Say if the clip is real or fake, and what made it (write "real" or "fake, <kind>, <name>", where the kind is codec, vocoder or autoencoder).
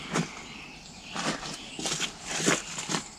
real